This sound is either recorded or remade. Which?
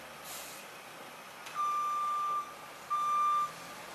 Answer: recorded